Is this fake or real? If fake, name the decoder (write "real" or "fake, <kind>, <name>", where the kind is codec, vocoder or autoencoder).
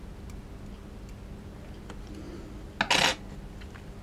real